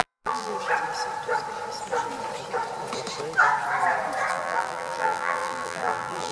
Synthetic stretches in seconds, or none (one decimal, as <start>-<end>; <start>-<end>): 0.0-0.5; 4.3-6.3